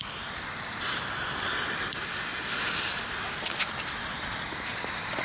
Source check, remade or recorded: recorded